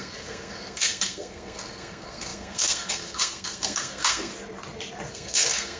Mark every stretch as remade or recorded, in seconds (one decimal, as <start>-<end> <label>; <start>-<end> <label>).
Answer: 0.0-4.3 remade; 4.3-5.1 recorded; 5.1-5.8 remade